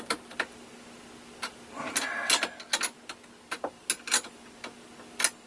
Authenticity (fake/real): real